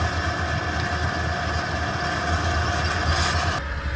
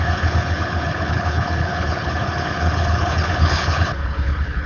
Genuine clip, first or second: first